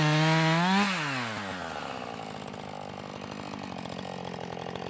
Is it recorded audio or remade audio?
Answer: recorded